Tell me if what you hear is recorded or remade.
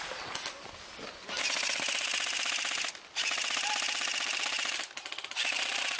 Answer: recorded